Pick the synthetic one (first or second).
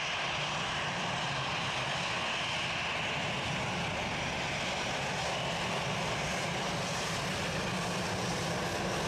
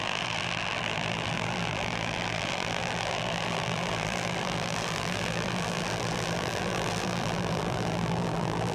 second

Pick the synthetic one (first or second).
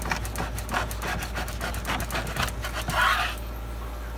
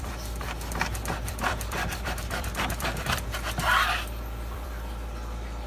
second